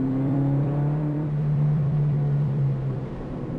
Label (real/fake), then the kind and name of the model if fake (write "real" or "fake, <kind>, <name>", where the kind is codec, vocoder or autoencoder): fake, vocoder, BigVGAN v2